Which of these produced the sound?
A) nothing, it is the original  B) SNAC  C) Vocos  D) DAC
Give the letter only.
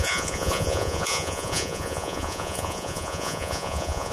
C